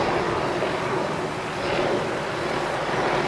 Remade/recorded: recorded